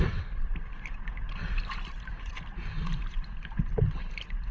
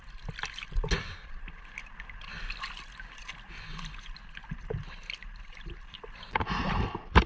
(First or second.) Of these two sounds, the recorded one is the second